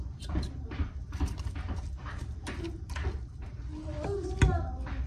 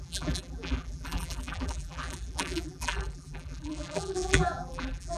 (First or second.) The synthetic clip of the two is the second